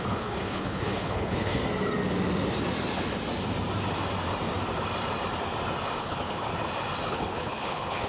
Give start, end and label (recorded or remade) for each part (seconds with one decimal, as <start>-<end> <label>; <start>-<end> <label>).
0.0-1.6 remade; 1.6-6.0 recorded; 6.0-6.5 remade; 6.5-7.1 recorded; 7.1-8.1 remade